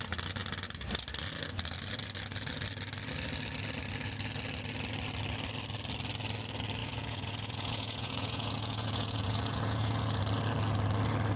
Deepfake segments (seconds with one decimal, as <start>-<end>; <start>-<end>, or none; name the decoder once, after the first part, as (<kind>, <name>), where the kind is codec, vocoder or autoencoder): 6.8-10.2 (vocoder, Vocos)

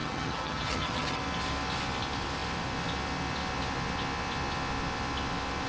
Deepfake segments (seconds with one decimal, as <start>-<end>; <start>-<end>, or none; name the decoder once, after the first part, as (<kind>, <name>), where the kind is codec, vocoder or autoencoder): 0.0-1.2 (vocoder, HiFi-GAN)

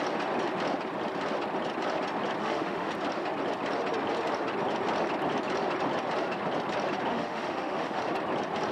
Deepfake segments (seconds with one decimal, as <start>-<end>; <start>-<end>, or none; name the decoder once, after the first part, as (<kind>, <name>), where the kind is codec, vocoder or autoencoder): 2.4-2.9 (autoencoder, DAC-VAE); 7.1-8.0

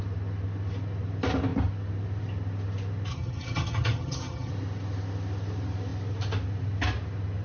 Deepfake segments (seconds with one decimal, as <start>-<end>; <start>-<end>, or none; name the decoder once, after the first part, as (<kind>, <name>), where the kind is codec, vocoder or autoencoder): 3.1-4.5 (vocoder, HiFi-GAN)